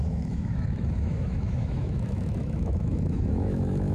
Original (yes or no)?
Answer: no